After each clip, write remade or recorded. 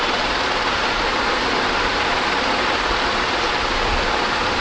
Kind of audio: recorded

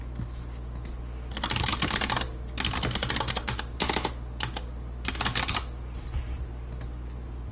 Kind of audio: recorded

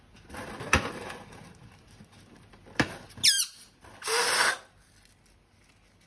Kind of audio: recorded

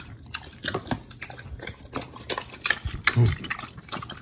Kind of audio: recorded